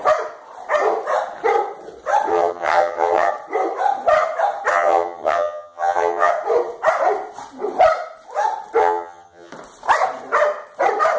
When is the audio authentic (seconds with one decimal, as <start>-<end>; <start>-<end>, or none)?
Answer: 0.0-2.3; 3.3-4.7; 6.3-8.8; 9.5-11.2